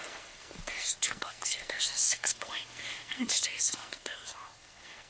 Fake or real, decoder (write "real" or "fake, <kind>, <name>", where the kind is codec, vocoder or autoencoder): fake, codec, SNAC